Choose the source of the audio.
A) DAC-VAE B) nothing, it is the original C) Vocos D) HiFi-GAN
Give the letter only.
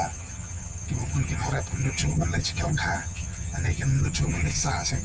D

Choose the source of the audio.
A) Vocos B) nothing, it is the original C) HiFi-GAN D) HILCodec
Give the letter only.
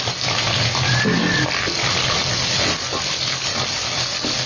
B